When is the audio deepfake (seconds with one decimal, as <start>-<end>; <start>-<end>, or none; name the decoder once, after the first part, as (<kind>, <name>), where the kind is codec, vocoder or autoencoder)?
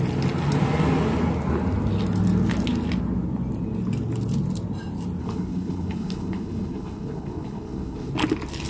5.2-8.1 (codec, HILCodec)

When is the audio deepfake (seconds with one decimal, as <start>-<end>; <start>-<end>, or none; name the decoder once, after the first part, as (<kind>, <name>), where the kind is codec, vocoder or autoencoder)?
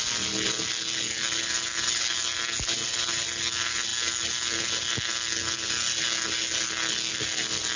none